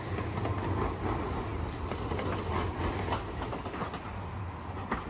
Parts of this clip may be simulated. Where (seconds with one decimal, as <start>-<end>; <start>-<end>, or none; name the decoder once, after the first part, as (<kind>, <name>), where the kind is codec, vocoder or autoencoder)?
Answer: none